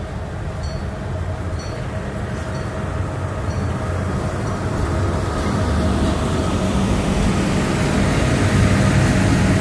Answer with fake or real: fake